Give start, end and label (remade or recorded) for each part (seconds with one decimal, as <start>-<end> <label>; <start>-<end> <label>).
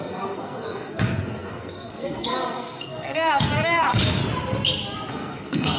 0.0-4.2 remade; 4.2-5.1 recorded; 5.1-5.8 remade